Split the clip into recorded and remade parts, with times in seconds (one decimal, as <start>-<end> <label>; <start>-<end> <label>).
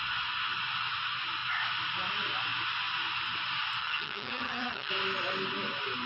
0.0-3.8 recorded; 3.8-4.9 remade; 4.9-6.1 recorded